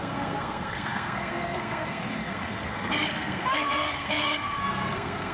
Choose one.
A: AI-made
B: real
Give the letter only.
A